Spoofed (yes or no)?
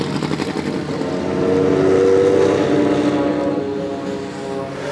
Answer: no